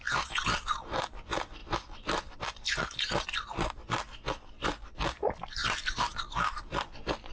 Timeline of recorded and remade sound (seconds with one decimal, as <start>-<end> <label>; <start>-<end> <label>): 0.0-1.6 recorded; 1.6-2.4 remade; 2.4-5.6 recorded; 5.6-6.6 remade; 6.6-7.3 recorded